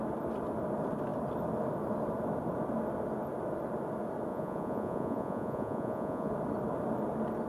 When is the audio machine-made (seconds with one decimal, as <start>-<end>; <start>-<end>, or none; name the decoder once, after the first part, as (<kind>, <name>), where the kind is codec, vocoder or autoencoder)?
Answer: 4.3-6.3 (vocoder, Vocos)